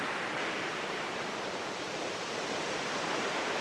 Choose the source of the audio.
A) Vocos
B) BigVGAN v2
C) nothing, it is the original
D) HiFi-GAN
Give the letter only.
B